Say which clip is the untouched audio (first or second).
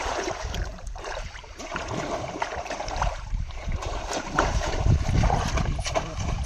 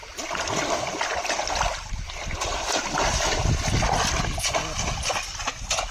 second